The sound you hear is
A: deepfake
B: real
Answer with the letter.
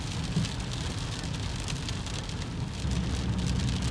B